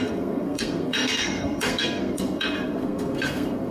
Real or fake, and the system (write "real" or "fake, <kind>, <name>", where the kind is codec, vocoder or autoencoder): fake, codec, SNAC